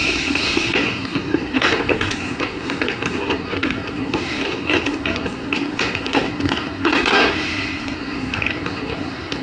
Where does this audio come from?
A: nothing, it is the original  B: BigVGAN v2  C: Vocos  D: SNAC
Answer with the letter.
D